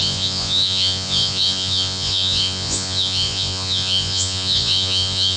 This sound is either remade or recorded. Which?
remade